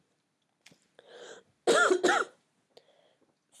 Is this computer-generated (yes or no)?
no